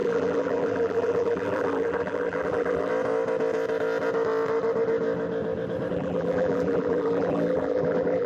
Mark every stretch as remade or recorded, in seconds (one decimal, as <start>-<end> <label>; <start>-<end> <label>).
0.0-2.9 remade; 2.9-5.9 recorded; 5.9-8.3 remade